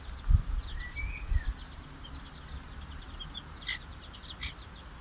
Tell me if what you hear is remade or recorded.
recorded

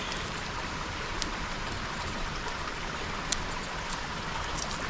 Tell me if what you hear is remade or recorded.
recorded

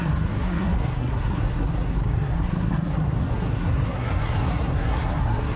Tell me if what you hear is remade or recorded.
remade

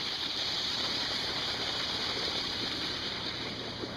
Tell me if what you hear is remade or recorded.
remade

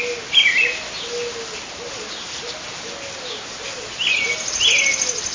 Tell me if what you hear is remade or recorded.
recorded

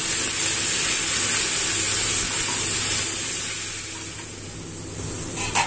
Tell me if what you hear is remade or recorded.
recorded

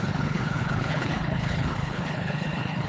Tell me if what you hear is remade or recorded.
remade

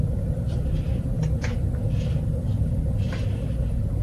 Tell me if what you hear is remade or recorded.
recorded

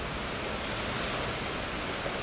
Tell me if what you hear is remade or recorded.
recorded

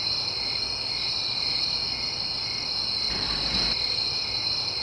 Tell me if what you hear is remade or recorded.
recorded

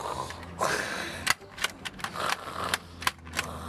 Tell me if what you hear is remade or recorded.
recorded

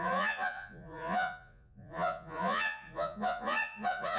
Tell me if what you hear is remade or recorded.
remade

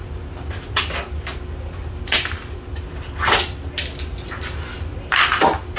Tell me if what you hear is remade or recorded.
recorded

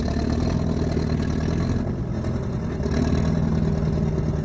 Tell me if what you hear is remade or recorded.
recorded